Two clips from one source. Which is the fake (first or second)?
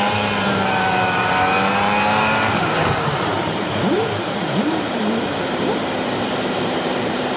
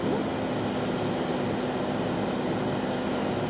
first